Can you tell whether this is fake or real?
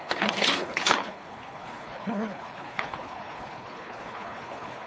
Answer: fake